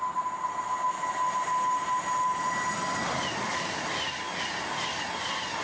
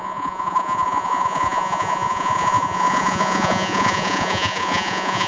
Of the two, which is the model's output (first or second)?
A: second